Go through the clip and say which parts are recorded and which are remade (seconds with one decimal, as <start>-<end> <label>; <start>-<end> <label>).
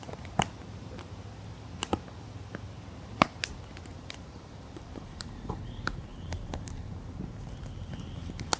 0.0-3.9 recorded; 3.9-5.6 remade; 5.6-6.1 recorded; 6.1-7.2 remade; 7.2-8.6 recorded